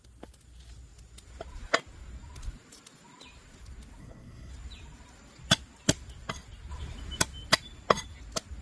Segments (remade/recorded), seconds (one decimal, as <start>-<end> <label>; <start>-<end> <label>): 0.0-4.0 recorded; 4.0-4.5 remade; 4.5-8.6 recorded